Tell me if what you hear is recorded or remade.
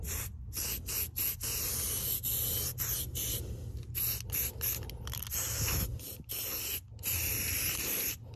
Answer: recorded